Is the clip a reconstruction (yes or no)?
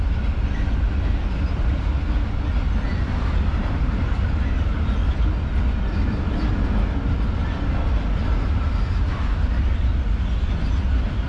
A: no